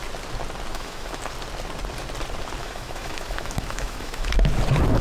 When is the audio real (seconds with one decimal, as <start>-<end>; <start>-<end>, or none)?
0.0-0.7; 1.2-2.6; 4.3-5.0